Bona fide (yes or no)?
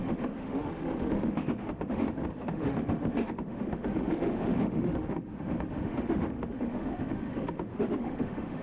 no